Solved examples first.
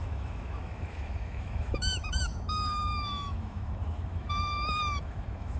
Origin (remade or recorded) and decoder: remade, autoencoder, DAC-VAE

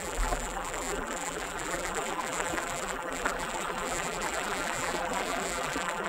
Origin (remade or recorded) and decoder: remade, vocoder, BigVGAN v2